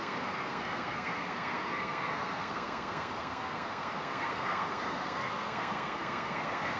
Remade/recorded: remade